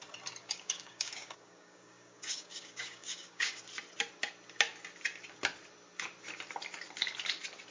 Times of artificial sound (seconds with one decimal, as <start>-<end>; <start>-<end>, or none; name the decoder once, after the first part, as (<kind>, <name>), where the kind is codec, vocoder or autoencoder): 0.4-3.6 (codec, DAC)